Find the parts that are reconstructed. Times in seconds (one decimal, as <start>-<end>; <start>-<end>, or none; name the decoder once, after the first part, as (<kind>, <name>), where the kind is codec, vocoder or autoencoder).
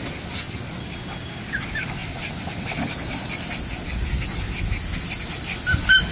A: 0.8-1.4 (codec, DAC)